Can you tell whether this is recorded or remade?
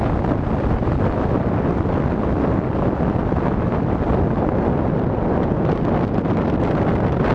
recorded